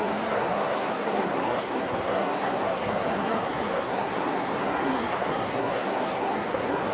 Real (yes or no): no